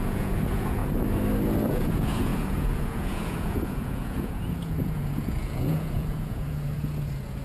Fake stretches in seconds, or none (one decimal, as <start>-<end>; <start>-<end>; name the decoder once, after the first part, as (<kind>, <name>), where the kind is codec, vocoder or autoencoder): 0.0-0.8 (vocoder, Vocos); 1.7-7.4